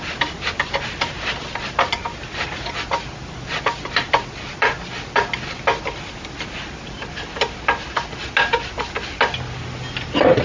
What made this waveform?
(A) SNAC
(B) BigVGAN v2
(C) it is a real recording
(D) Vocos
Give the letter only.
C